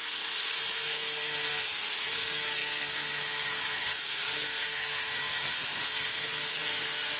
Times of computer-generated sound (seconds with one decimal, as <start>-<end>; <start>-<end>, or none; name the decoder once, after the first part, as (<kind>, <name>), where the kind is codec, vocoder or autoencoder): 0.0-7.2 (codec, SNAC)

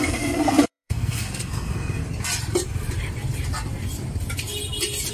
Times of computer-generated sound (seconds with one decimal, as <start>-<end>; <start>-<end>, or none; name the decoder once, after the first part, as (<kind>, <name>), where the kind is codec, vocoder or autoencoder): 0.0-2.0 (codec, SNAC)